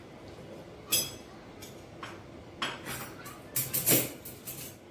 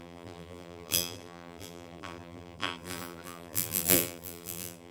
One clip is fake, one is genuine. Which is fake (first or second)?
second